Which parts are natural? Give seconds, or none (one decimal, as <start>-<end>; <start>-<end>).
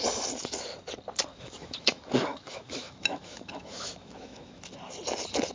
0.0-1.3; 4.6-5.5